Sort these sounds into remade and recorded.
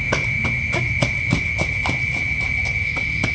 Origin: recorded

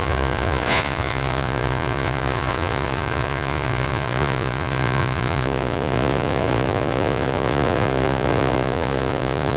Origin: remade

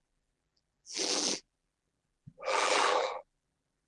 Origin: remade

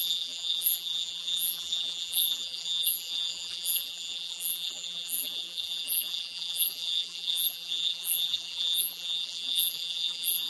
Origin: remade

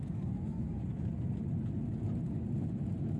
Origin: recorded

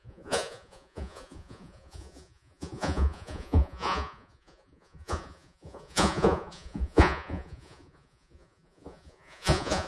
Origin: remade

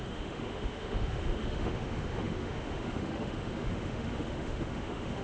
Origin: remade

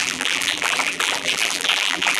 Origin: remade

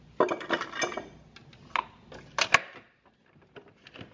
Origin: recorded